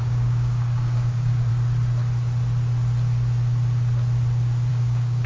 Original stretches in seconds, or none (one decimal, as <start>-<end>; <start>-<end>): 1.5-4.7